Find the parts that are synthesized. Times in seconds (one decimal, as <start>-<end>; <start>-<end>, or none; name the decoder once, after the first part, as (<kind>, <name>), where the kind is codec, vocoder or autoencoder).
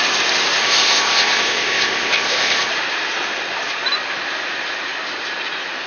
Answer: 0.6-2.7 (codec, ZipCodec)